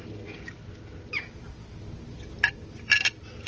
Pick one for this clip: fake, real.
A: real